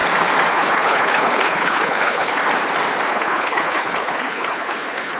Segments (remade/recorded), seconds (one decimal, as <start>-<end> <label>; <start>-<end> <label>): 0.0-0.5 recorded; 0.5-2.4 remade; 2.4-3.1 recorded; 3.1-5.2 remade